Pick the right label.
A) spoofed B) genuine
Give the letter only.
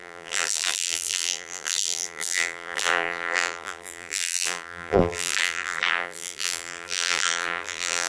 A